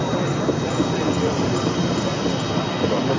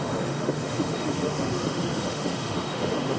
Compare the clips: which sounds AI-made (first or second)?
second